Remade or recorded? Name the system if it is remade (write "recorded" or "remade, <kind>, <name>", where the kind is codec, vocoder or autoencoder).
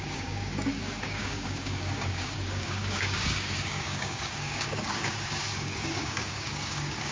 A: remade, codec, DAC